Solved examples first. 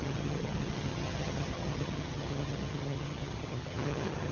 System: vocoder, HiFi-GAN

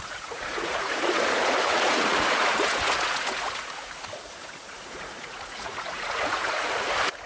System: vocoder, Vocos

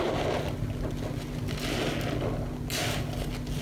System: none